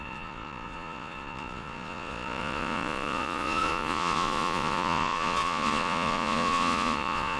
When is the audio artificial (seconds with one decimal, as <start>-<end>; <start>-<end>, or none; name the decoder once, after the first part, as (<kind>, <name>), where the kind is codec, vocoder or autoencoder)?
0.0-7.4 (vocoder, Vocos)